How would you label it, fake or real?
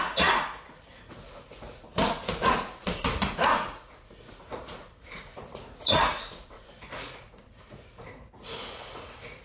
fake